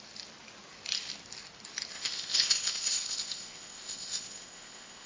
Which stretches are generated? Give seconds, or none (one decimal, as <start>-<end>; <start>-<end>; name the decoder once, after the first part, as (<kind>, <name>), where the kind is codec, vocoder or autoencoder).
1.9-5.1 (codec, ZipCodec)